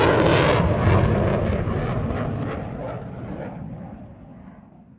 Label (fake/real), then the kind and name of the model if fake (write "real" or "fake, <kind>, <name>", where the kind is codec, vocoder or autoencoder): real